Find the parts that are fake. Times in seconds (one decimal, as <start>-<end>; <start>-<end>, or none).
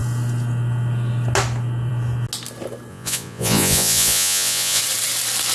2.9-4.8